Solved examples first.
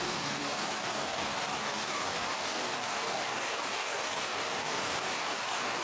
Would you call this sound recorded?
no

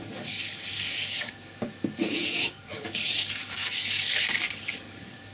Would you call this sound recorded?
no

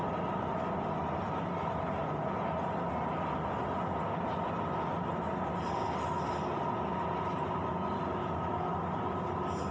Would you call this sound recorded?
yes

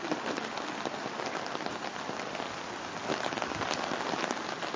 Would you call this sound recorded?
yes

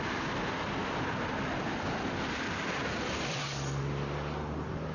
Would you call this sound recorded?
yes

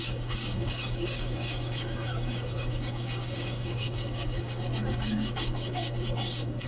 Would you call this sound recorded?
no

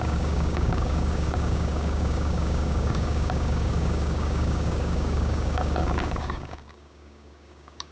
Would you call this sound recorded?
no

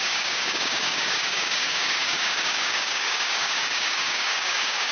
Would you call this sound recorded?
no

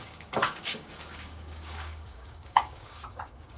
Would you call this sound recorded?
no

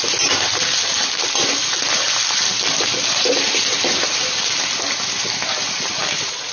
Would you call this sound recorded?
yes